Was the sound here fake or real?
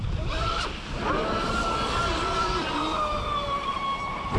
real